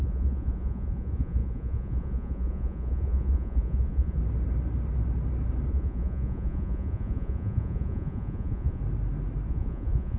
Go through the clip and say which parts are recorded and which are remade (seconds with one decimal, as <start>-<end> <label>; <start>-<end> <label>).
0.0-4.2 remade; 4.2-5.7 recorded; 5.7-8.8 remade; 8.8-9.5 recorded; 9.5-10.2 remade